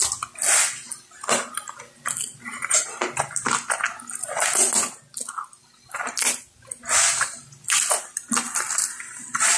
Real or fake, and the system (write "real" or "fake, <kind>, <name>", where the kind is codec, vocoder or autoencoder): real